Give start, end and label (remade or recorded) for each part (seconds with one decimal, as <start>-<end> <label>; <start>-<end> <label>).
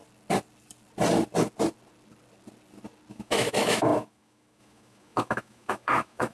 0.0-3.1 recorded; 3.1-6.3 remade